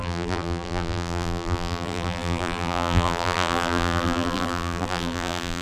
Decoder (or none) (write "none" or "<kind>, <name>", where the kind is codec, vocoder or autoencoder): vocoder, BigVGAN v2